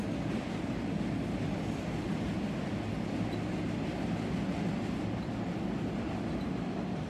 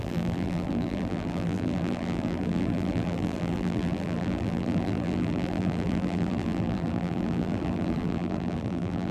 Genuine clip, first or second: first